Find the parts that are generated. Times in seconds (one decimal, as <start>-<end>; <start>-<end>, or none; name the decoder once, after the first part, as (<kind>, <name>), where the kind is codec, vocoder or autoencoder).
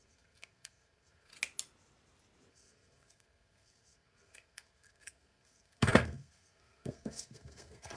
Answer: 0.0-1.3 (codec, SNAC); 2.5-8.0